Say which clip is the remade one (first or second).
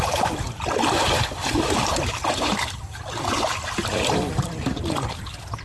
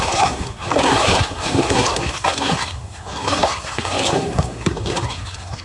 second